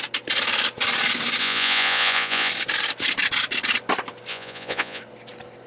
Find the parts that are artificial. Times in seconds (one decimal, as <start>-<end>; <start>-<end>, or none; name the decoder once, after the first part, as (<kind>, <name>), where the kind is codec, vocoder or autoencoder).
1.4-2.5 (vocoder, Vocos); 4.3-5.0